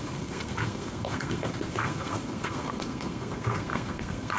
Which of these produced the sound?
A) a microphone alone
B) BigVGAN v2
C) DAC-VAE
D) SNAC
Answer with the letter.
D